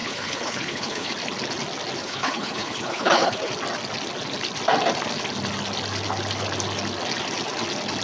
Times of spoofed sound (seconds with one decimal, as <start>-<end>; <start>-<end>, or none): 0.0-1.1; 2.0-3.5

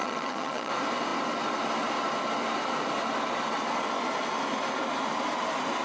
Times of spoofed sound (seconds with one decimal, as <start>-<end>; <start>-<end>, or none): 0.0-0.7

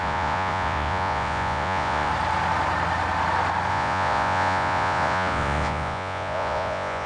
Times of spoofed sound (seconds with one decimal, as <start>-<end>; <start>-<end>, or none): 0.0-2.1; 3.7-7.1

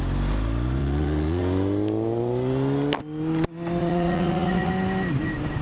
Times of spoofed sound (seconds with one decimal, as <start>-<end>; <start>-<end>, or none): 0.8-1.4; 3.8-4.7

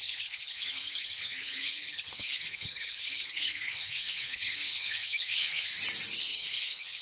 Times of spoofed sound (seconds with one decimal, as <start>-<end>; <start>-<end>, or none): 0.0-5.7; 6.2-7.0